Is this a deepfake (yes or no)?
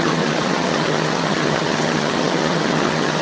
yes